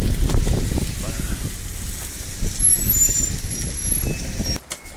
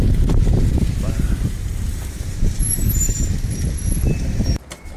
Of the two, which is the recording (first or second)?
first